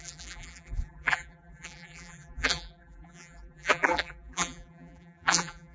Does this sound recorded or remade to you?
remade